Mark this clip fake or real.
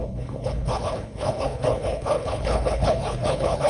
fake